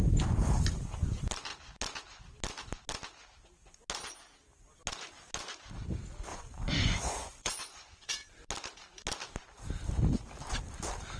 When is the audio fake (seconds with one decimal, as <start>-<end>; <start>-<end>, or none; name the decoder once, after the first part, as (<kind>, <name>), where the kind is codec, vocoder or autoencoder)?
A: 6.3-8.1 (vocoder, Vocos)